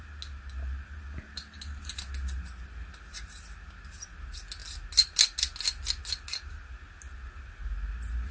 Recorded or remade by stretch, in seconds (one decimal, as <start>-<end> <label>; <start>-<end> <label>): 0.0-8.3 recorded